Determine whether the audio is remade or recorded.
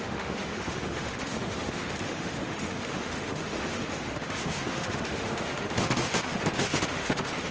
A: remade